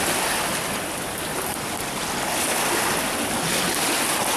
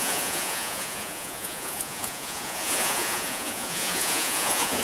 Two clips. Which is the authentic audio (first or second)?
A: first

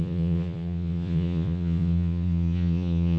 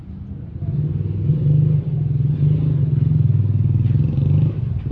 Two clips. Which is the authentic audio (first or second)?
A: second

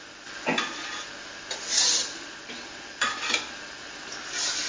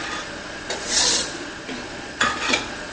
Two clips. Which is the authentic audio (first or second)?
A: first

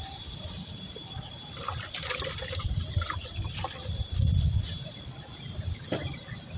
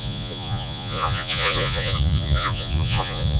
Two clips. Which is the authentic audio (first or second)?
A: first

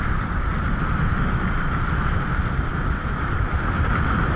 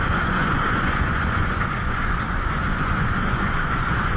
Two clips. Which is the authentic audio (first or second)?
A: first